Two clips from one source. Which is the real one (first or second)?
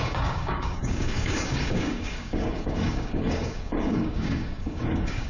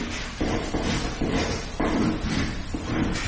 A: second